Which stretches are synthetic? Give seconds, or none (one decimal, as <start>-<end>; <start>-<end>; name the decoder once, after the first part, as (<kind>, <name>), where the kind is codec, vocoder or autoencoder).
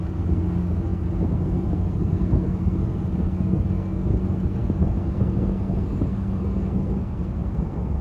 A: 0.0-8.0 (codec, SNAC)